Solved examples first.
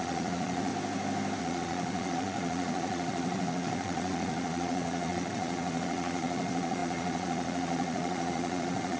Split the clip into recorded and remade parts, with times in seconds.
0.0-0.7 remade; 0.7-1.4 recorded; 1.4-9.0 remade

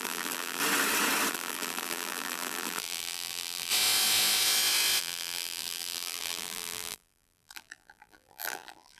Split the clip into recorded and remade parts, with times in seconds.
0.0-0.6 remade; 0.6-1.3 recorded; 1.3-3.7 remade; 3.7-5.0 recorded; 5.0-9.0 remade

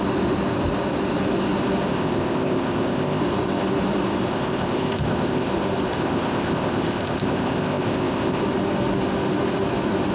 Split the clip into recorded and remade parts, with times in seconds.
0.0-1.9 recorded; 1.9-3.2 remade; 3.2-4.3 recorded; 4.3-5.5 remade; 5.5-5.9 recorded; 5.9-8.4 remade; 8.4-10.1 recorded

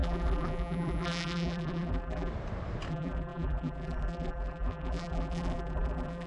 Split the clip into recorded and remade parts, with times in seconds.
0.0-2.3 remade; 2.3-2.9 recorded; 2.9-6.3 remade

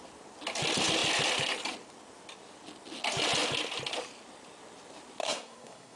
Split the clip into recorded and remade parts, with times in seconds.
0.0-5.2 recorded; 5.2-6.0 remade